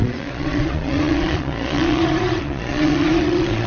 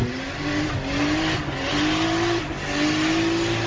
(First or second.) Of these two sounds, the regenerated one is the first